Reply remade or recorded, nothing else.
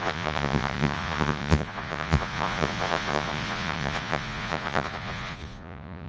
remade